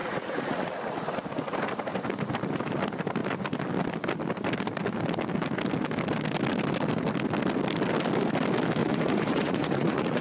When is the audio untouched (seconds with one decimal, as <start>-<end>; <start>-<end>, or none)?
0.7-8.8

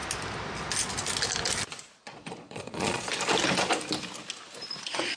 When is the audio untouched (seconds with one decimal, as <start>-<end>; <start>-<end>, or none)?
0.0-2.0; 3.1-4.8